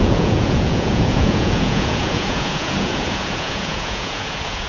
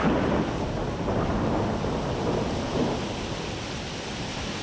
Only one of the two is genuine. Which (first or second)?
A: second